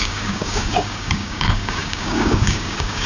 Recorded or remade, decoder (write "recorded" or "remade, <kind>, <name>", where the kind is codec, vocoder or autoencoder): remade, codec, DAC